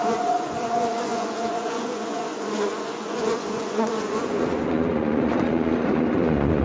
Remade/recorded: remade